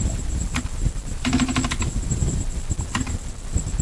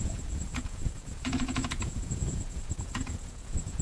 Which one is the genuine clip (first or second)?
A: first